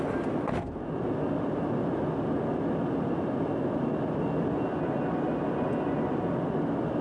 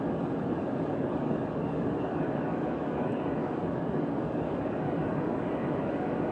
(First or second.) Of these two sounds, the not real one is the second